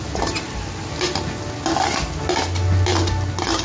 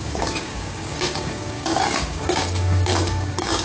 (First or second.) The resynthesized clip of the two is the second